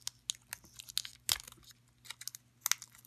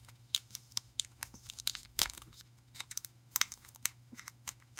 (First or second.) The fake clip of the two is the second